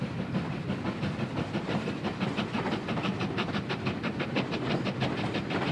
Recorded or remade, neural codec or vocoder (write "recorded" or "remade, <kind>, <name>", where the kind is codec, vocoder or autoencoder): remade, vocoder, BigVGAN v2